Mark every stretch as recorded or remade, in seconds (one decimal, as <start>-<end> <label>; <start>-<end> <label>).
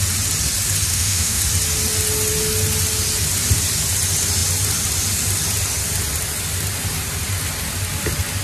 0.0-0.9 recorded; 0.9-1.4 remade; 1.4-8.4 recorded